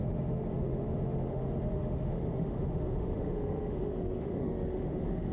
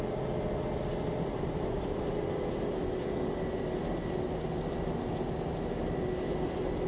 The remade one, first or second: first